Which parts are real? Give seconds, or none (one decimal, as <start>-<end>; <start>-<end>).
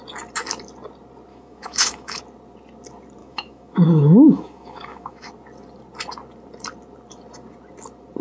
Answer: 0.0-1.3; 2.2-3.2; 5.3-8.2